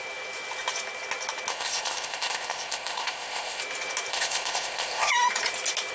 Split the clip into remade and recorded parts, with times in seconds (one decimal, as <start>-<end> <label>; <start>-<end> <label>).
0.0-1.5 recorded; 1.5-3.6 remade; 3.6-4.1 recorded; 4.1-5.1 remade; 5.1-5.9 recorded